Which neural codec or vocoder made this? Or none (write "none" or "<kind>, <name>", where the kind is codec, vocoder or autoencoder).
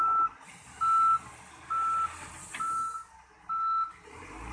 none